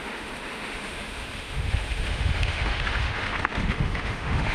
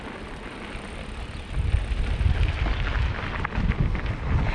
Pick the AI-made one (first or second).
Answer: first